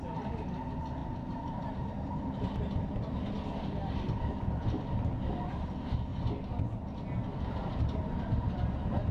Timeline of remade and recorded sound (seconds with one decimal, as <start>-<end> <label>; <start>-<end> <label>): 0.0-1.0 recorded; 1.0-2.1 remade; 2.1-7.3 recorded; 7.3-8.3 remade; 8.3-9.1 recorded